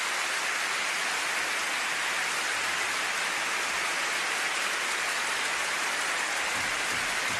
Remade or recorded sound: recorded